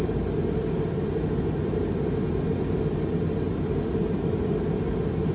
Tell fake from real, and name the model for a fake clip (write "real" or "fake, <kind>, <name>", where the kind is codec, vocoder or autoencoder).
real